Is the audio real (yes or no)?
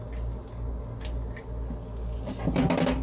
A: yes